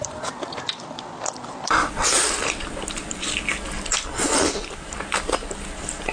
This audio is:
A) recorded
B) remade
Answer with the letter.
B